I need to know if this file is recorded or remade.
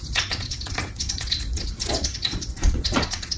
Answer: remade